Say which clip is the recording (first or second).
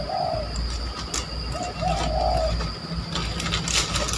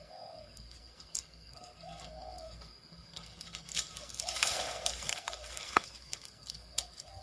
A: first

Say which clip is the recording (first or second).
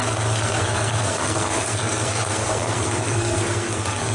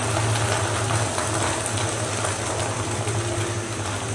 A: second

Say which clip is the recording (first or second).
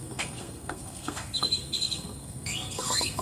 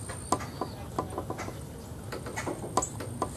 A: second